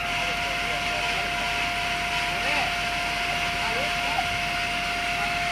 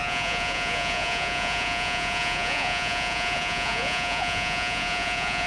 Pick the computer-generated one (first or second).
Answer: second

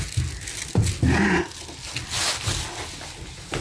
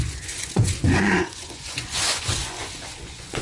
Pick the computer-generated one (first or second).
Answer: second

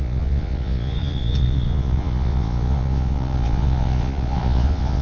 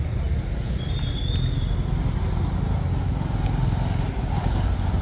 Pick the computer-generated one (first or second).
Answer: first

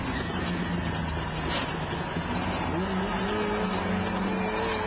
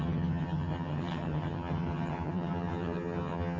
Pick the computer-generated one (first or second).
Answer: second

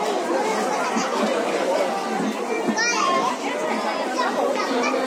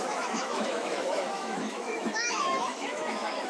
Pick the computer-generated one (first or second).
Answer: second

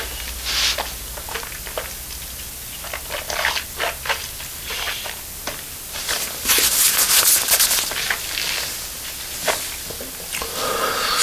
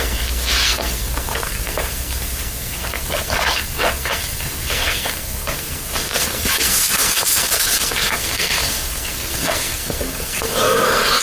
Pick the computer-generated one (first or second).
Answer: second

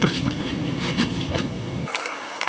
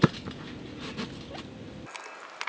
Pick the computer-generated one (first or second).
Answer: first